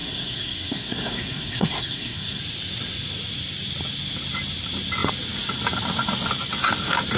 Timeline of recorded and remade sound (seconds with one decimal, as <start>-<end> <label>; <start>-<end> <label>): 0.0-2.4 remade; 2.4-7.2 recorded